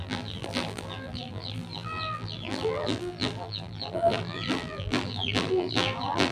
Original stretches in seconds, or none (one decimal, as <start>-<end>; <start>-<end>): none